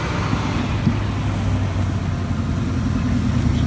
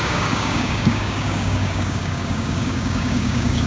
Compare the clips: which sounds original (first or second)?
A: first